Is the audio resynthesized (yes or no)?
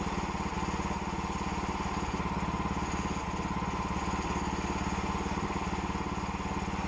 no